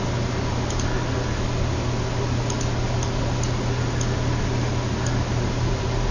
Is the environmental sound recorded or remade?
recorded